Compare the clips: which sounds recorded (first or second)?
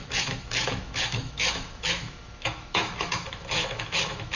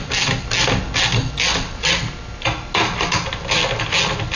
second